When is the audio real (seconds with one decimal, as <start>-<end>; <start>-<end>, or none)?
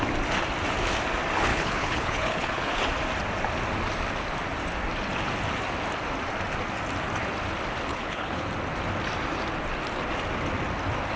0.0-1.5; 2.8-7.9; 8.5-11.2